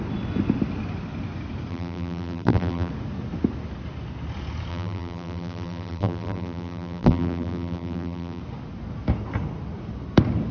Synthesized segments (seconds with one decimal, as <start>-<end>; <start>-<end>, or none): 1.7-2.9; 4.7-8.4